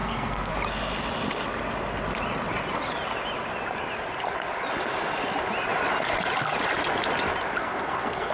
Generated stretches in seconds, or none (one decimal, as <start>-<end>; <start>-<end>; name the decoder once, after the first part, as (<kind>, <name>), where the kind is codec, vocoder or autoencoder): 0.0-0.5 (codec, SNAC); 7.6-8.3